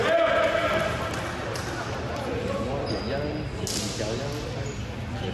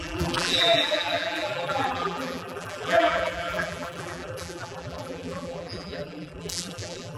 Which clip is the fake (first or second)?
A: second